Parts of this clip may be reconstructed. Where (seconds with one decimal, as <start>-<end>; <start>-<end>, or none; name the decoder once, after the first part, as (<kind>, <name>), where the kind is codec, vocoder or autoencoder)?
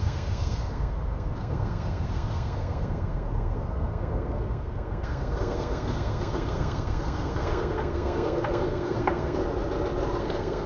0.0-9.4 (codec, SNAC); 10.2-10.7